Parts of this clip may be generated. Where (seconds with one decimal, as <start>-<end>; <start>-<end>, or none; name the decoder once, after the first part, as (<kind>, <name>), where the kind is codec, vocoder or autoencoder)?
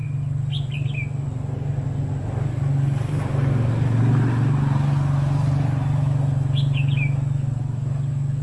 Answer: none